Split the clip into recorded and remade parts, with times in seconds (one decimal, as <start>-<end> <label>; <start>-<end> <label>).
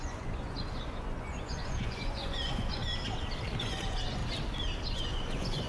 0.0-2.8 remade; 2.8-3.6 recorded; 3.6-4.2 remade; 4.2-4.9 recorded; 4.9-5.7 remade